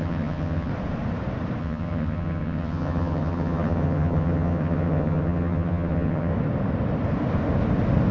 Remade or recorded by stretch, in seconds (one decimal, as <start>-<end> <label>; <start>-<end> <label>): 0.0-0.7 remade; 0.7-1.6 recorded; 1.6-6.3 remade; 6.3-8.1 recorded